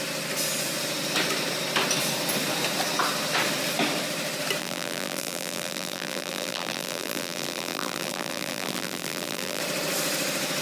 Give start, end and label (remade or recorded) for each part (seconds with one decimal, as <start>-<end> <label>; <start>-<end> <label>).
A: 0.0-4.6 recorded; 4.6-9.6 remade; 9.6-10.6 recorded